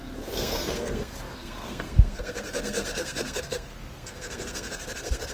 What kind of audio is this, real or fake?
fake